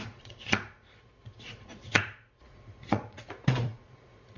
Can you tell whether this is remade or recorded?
remade